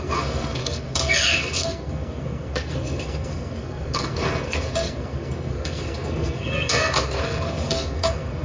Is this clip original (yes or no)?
no